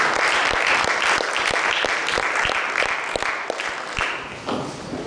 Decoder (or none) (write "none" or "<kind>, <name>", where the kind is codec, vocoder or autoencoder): none